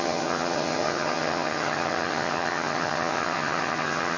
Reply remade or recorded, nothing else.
remade